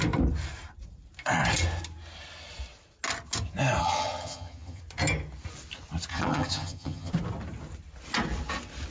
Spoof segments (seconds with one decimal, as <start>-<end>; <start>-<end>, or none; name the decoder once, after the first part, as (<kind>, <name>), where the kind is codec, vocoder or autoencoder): 3.8-4.8 (vocoder, HiFi-GAN); 6.1-7.1

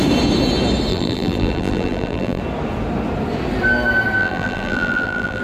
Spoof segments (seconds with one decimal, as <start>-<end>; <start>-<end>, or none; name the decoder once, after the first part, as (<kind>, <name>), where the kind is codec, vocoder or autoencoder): 0.9-2.4 (vocoder, BigVGAN v2); 4.2-5.4